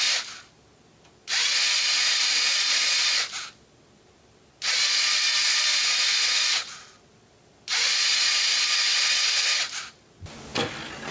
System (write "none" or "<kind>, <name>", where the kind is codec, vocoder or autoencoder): none